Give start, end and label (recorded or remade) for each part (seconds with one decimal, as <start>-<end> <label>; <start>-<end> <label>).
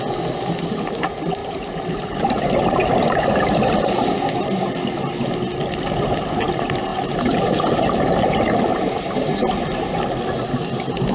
0.0-1.4 recorded; 1.4-3.9 remade; 3.9-6.9 recorded; 6.9-7.4 remade; 7.4-8.7 recorded; 8.7-9.6 remade; 9.6-11.1 recorded